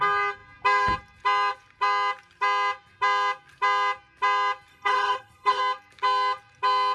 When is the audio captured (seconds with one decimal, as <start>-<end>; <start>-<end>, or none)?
0.0-4.7; 5.6-6.9